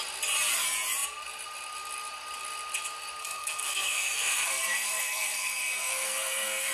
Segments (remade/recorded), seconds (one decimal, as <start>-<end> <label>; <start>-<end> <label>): 0.0-3.2 recorded; 3.2-6.7 remade